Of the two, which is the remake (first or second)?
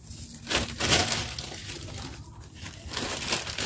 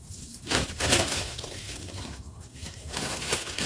second